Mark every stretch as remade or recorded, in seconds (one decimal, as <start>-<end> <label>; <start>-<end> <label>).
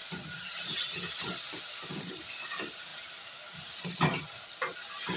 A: 0.0-5.2 recorded